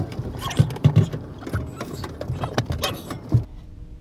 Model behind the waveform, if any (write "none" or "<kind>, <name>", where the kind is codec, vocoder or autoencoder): none